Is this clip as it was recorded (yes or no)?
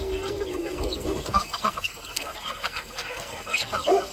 no